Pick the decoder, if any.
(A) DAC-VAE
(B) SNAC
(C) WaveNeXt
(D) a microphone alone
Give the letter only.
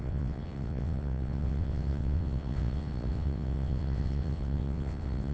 C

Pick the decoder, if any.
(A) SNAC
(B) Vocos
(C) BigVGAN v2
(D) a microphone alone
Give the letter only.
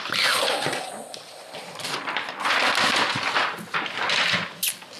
D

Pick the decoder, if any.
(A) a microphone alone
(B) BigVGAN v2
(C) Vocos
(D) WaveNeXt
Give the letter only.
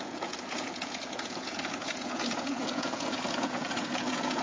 C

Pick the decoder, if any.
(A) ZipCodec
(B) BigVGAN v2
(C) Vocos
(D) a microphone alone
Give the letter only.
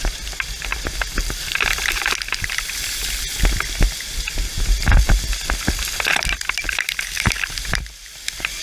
D